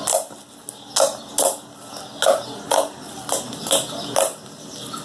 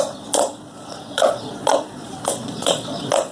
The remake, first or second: second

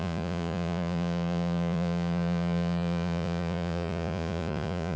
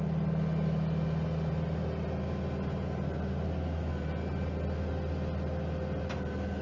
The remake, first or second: first